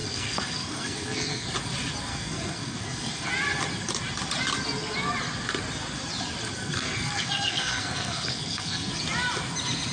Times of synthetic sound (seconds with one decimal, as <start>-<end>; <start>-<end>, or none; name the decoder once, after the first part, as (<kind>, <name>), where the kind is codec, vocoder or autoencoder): 0.0-1.5 (codec, SNAC); 2.1-3.3; 6.6-8.9